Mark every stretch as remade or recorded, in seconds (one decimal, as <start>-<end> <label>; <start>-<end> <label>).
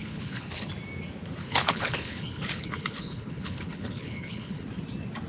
0.0-0.7 remade; 0.7-1.4 recorded; 1.4-4.6 remade; 4.6-5.3 recorded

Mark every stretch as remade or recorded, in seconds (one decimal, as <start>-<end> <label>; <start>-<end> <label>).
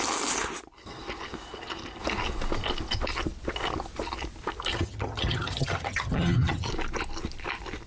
0.0-4.7 recorded; 4.7-6.7 remade; 6.7-7.9 recorded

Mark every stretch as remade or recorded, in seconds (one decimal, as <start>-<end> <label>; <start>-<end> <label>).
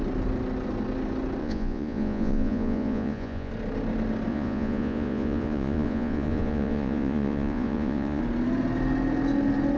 0.0-1.4 recorded; 1.4-3.5 remade; 3.5-4.3 recorded; 4.3-8.2 remade; 8.2-9.8 recorded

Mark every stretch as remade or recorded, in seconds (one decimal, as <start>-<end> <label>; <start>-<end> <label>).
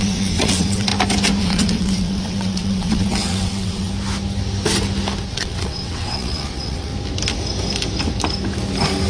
0.0-0.9 remade; 0.9-1.4 recorded; 1.4-3.9 remade; 3.9-5.3 recorded; 5.3-6.9 remade; 6.9-9.1 recorded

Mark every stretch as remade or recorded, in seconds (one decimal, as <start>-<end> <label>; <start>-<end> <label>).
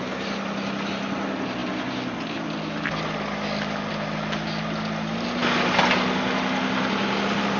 0.0-7.6 recorded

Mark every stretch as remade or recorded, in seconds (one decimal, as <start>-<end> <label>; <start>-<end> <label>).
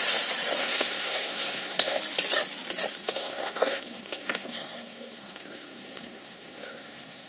0.0-0.6 recorded; 0.6-2.0 remade; 2.0-2.9 recorded; 2.9-7.3 remade